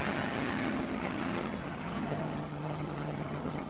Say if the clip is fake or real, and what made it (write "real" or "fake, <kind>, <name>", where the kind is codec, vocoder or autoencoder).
fake, vocoder, HiFi-GAN